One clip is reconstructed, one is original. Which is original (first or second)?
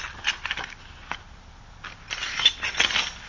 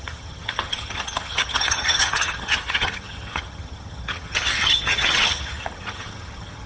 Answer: first